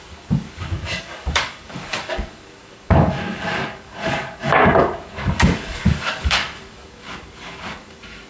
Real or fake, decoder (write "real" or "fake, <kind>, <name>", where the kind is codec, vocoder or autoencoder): fake, codec, DAC